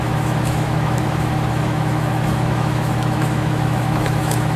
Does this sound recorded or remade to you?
remade